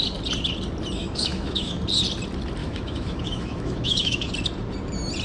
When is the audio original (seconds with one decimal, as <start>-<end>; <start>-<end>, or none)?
0.0-1.0; 1.8-2.6; 4.3-5.2